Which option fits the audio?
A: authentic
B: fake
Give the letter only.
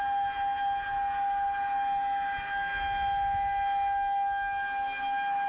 A